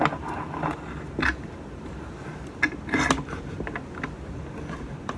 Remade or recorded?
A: recorded